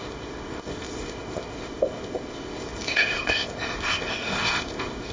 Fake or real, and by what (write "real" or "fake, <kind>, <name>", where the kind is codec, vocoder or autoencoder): fake, codec, ZipCodec